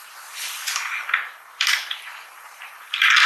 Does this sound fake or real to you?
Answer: fake